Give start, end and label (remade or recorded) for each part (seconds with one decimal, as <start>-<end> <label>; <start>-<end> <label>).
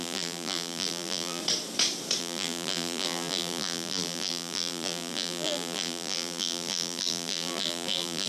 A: 0.0-1.4 remade; 1.4-2.2 recorded; 2.2-8.3 remade